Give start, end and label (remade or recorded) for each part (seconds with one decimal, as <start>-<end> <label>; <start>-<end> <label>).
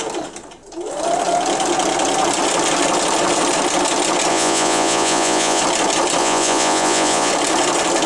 0.0-4.3 recorded; 4.3-5.6 remade; 5.6-6.2 recorded; 6.2-7.3 remade; 7.3-8.1 recorded